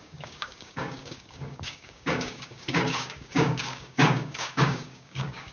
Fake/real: fake